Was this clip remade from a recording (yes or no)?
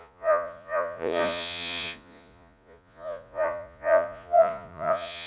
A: yes